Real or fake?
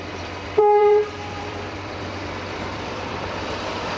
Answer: fake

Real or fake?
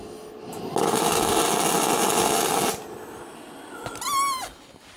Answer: real